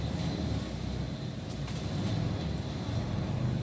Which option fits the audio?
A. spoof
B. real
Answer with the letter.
B